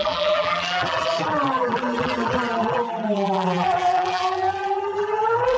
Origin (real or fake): fake